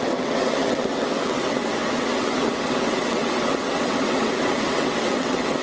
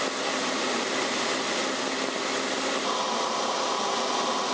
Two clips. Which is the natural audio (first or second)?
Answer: second